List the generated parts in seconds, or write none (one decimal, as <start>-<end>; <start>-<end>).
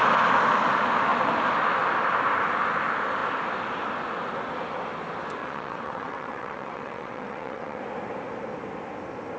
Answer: 5.4-7.8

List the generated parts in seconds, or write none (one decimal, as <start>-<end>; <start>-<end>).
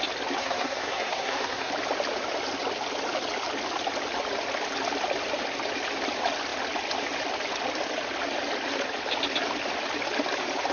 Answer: 0.4-1.7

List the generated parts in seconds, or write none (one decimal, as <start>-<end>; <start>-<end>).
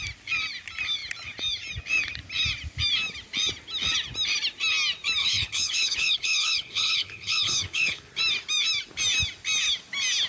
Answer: 5.2-8.1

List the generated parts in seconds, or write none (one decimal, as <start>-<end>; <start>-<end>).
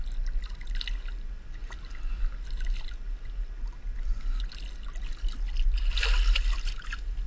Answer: none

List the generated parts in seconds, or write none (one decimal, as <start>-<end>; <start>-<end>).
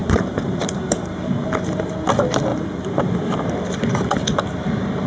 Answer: 0.0-1.3; 2.5-3.5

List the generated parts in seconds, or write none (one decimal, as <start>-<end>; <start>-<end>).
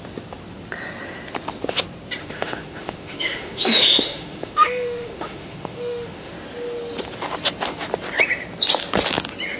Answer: 2.2-6.3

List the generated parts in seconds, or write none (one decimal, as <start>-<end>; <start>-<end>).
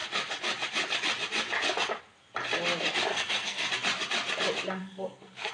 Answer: 3.1-3.7; 4.8-5.5